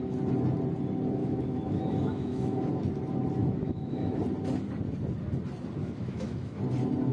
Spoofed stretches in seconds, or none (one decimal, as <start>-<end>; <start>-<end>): 1.2-2.7; 3.4-4.2; 5.8-6.6